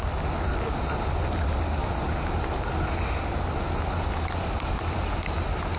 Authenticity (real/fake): real